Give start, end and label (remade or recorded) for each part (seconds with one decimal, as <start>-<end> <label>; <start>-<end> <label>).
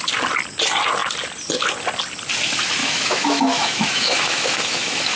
0.0-2.8 recorded; 2.8-5.2 remade